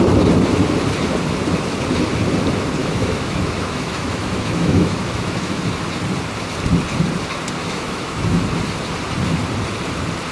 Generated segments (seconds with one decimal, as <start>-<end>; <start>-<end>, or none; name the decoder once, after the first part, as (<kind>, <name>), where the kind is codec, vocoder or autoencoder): 2.8-5.6 (autoencoder, DAC-VAE); 7.6-8.4